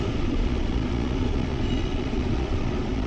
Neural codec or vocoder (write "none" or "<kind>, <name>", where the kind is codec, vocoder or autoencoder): vocoder, Vocos